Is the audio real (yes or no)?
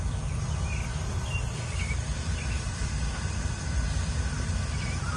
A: yes